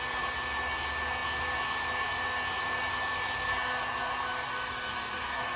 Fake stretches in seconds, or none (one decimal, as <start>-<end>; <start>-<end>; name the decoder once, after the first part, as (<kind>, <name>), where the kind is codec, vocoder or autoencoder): none